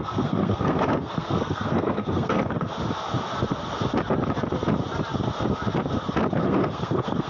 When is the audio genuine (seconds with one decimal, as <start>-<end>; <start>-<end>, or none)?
2.7-6.3